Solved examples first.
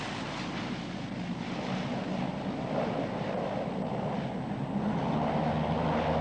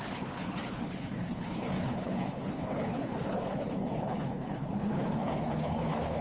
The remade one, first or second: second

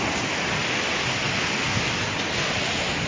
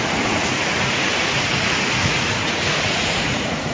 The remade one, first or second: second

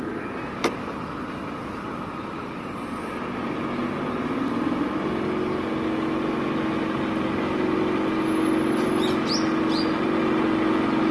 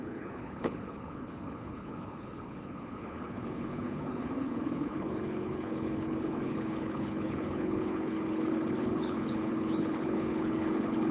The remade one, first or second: second